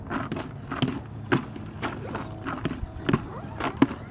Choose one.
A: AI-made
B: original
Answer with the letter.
B